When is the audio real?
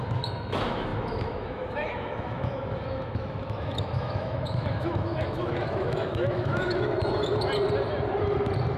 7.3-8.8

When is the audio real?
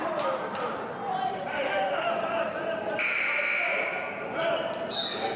0.0-1.5; 2.1-5.4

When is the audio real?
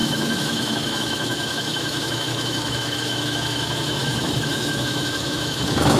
none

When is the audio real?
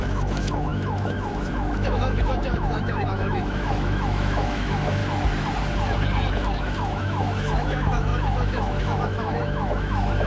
5.0-6.3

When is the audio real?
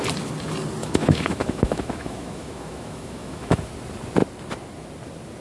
0.0-0.8; 3.7-5.4